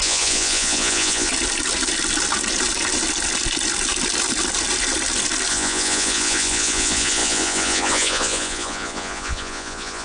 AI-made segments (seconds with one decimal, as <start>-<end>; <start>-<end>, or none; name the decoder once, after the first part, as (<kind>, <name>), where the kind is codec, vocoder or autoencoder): 0.0-1.3 (vocoder, Vocos); 5.5-10.0